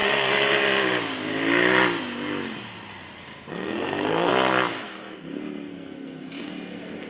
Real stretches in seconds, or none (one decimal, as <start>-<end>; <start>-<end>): 0.0-3.5; 4.3-4.8

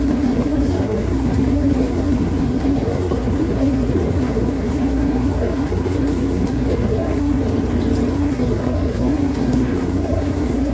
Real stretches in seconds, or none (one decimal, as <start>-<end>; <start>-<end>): 7.4-8.1

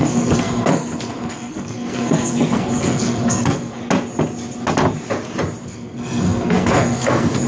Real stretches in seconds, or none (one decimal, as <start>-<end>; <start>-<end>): 3.8-5.6

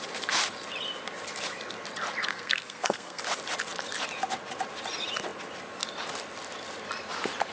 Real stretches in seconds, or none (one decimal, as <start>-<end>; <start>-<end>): 0.0-2.3; 3.2-7.5

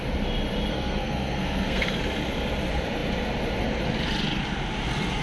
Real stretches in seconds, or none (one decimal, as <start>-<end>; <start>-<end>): 0.0-0.7; 2.0-5.2

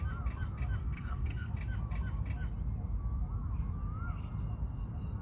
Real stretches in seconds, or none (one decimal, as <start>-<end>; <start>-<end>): 0.0-0.8; 1.5-5.2